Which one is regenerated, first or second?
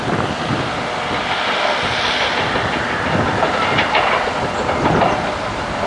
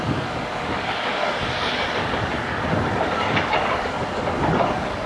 second